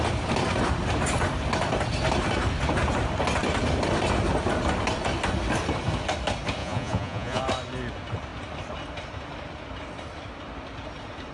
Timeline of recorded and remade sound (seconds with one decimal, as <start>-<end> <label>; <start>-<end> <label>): 0.0-6.6 recorded; 6.6-7.4 remade; 7.4-11.3 recorded